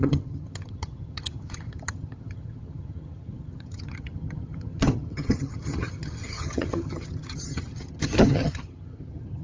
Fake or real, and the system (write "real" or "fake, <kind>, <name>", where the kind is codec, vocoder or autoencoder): fake, vocoder, HiFi-GAN